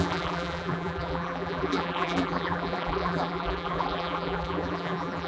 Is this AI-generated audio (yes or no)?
yes